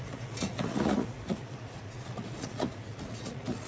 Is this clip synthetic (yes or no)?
yes